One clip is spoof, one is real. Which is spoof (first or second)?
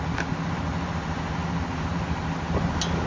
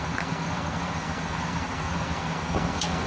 second